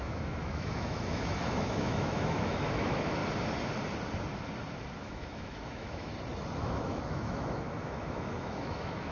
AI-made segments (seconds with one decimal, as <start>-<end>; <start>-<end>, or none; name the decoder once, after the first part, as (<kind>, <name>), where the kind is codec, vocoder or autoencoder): 0.0-3.2 (autoencoder, DAC-VAE); 5.0-6.1; 6.6-9.1

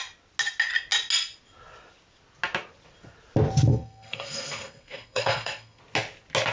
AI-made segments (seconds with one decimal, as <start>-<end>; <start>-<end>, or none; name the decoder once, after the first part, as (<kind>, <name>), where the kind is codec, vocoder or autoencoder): 3.7-5.8 (codec, SNAC)

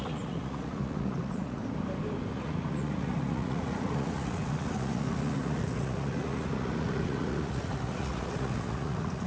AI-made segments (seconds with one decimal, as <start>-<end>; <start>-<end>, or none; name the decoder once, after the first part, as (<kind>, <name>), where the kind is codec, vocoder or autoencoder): 0.0-1.6 (vocoder, Vocos); 2.3-9.3

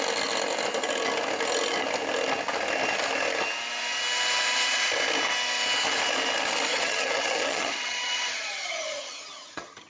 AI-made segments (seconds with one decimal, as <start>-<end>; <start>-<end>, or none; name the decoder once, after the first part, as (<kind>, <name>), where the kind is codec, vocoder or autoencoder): 6.7-9.9 (vocoder, HiFi-GAN)